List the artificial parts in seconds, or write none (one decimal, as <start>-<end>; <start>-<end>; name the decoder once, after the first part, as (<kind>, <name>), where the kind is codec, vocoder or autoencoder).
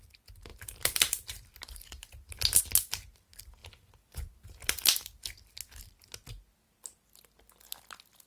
0.5-2.6 (vocoder, BigVGAN v2); 3.6-5.3